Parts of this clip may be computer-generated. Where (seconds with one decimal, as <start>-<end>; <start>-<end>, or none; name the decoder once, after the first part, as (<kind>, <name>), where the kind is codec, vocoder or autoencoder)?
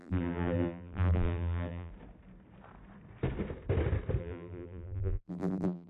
0.0-1.9 (vocoder, BigVGAN v2); 4.2-5.9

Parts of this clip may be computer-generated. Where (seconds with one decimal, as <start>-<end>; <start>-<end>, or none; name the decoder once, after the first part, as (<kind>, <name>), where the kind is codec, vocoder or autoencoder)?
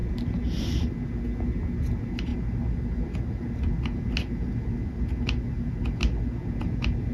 none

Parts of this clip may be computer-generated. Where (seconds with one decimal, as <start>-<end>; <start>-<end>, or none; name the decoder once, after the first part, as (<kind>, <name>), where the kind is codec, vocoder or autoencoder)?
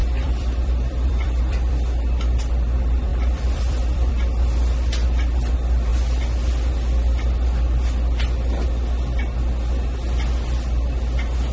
0.0-1.7 (vocoder, BigVGAN v2); 3.1-4.1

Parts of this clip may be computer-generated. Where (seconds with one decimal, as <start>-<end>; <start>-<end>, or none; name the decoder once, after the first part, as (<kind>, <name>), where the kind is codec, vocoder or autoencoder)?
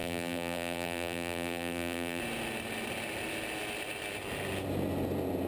0.0-2.2 (vocoder, BigVGAN v2)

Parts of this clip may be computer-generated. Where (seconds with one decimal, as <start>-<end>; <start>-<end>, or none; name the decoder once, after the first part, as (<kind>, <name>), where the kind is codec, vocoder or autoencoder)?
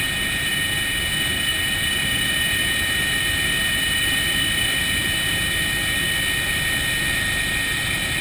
0.0-0.5 (vocoder, BigVGAN v2); 1.1-4.8; 7.0-8.2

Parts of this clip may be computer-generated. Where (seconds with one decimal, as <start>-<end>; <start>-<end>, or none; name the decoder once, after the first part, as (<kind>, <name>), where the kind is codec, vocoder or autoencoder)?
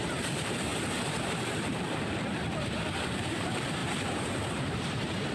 0.0-3.8 (vocoder, BigVGAN v2); 4.4-5.3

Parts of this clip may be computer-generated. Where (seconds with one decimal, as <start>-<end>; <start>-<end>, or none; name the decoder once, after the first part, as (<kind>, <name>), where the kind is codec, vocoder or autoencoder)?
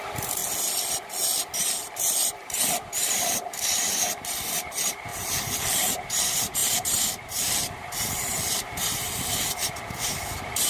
0.0-0.4 (vocoder, BigVGAN v2); 1.6-10.7